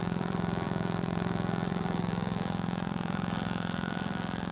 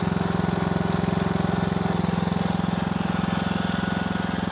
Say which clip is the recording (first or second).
second